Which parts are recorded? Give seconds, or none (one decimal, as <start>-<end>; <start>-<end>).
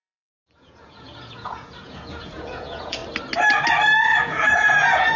3.0-4.2